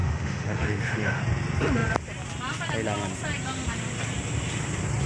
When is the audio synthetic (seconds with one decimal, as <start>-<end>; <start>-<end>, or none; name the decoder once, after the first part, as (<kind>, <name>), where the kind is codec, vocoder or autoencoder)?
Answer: 0.0-1.2 (autoencoder, DAC-VAE)